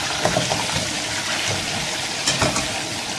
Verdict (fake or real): real